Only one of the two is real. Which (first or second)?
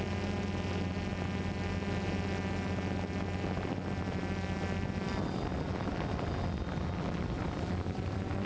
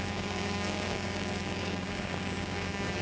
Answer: first